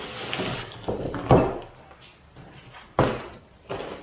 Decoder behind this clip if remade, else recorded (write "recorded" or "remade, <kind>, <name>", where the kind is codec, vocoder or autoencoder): recorded